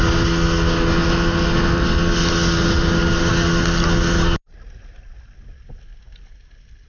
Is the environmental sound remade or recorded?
recorded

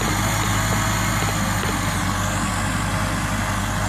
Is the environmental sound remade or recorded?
recorded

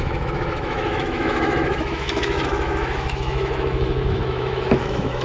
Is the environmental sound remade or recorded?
remade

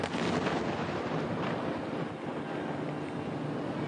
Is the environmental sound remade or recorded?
recorded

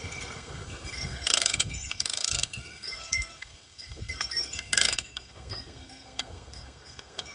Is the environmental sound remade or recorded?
remade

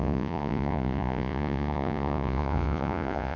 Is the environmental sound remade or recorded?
remade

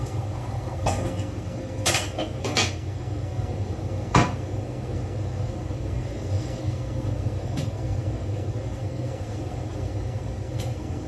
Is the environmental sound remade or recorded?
remade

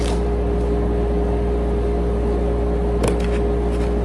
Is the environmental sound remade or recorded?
recorded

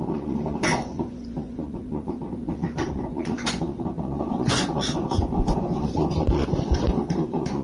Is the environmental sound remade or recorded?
remade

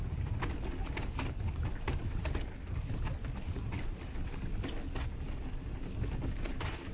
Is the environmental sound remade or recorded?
recorded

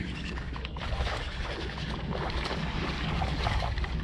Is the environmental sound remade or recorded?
remade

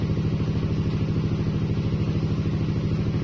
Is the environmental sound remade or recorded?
recorded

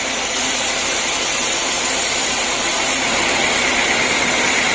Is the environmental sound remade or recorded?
recorded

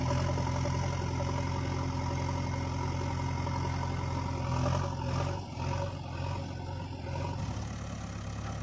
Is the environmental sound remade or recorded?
recorded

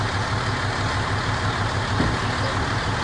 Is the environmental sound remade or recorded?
recorded